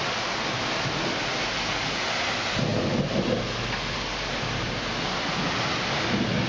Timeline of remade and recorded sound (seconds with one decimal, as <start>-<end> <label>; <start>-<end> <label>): 0.0-6.5 recorded